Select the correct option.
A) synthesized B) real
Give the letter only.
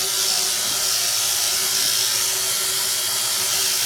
B